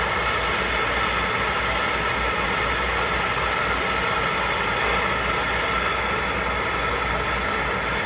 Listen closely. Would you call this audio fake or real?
real